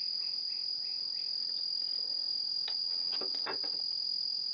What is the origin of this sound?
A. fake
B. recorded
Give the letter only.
B